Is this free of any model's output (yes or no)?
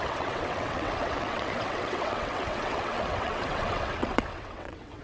no